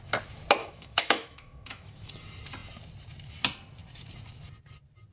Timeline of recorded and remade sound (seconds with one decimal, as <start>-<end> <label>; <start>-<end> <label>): 0.0-0.6 recorded; 0.6-2.1 remade; 2.1-5.1 recorded